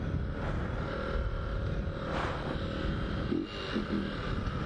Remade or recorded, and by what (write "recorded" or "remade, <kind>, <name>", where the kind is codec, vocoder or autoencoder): recorded